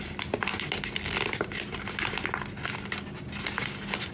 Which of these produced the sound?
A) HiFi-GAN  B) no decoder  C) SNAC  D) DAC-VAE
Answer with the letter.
B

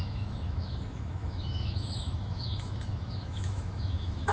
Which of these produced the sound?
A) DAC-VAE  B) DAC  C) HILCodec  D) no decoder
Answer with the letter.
A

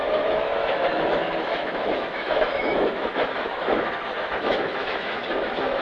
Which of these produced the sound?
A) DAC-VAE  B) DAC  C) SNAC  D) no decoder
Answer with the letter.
A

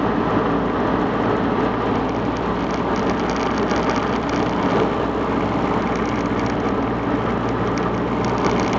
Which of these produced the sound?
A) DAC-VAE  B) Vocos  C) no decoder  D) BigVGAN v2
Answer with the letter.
C